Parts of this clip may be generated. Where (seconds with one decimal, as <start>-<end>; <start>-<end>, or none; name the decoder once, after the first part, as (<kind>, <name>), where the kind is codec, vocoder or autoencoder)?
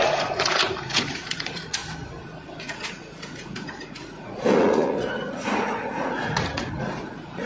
0.0-1.8 (vocoder, Vocos); 2.6-7.5